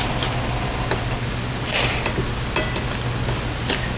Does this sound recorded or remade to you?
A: recorded